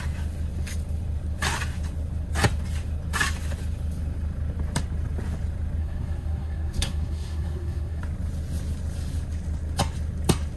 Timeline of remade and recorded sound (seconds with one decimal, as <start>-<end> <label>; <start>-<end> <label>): 0.0-5.8 recorded; 5.8-8.0 remade; 8.0-10.6 recorded